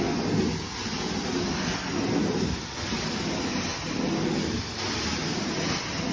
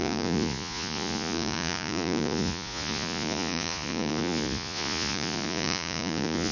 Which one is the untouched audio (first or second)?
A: first